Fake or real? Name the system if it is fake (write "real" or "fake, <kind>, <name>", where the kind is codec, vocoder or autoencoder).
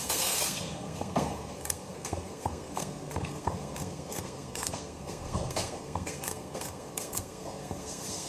fake, codec, SNAC